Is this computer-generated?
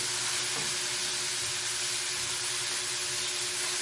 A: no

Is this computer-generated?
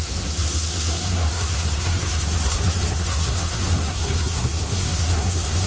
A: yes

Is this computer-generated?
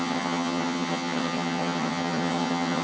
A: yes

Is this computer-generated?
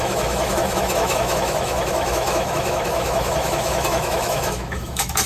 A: yes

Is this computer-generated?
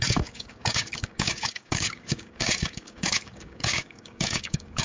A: yes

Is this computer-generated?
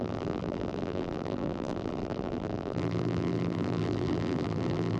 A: yes